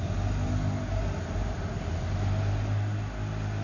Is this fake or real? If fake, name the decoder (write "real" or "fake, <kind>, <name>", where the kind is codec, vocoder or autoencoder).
real